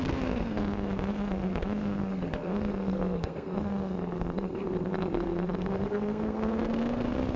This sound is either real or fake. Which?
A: fake